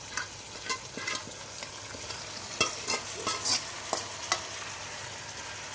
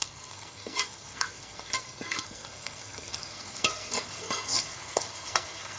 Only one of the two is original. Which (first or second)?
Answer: first